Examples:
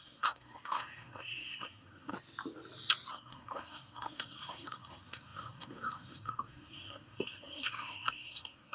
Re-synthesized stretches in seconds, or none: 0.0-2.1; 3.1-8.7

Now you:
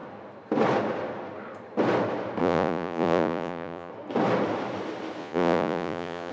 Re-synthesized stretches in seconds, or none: 2.4-3.9; 5.2-6.3

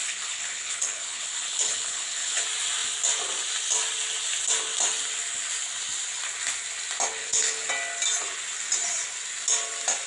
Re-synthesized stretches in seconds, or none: 0.0-2.4; 7.2-7.7